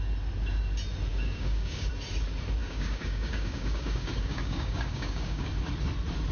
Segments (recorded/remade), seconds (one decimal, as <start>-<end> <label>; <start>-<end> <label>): 0.0-1.1 recorded; 1.1-1.9 remade; 1.9-2.6 recorded; 2.6-5.5 remade; 5.5-6.3 recorded